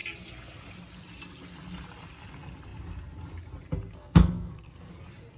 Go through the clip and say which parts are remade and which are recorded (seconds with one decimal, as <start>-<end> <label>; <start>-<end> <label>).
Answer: 0.0-4.0 recorded; 4.0-4.9 remade; 4.9-5.4 recorded